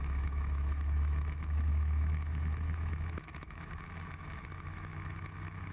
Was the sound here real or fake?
fake